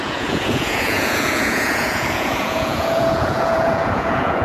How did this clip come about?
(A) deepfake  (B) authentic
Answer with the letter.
A